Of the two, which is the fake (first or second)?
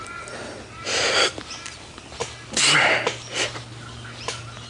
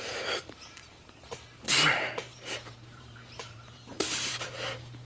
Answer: second